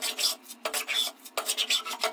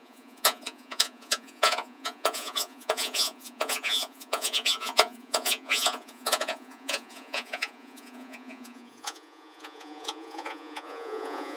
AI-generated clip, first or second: second